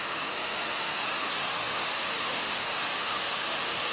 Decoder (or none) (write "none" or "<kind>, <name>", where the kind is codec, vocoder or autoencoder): autoencoder, DAC-VAE